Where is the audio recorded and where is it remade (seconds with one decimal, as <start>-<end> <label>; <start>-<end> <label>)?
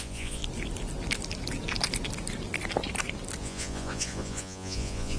0.0-0.4 remade; 0.4-3.4 recorded; 3.4-5.2 remade